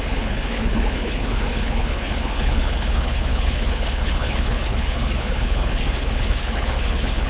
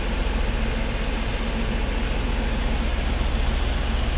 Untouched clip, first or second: second